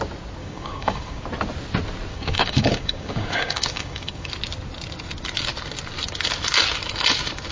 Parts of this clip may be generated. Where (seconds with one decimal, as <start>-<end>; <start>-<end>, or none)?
0.4-1.2; 2.1-4.3